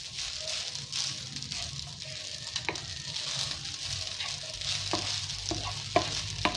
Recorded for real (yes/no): yes